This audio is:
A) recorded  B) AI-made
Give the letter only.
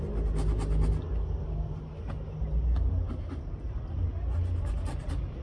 A